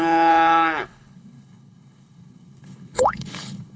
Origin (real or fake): fake